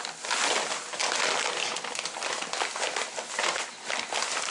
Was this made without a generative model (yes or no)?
yes